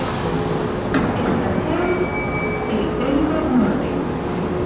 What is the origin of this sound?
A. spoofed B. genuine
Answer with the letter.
B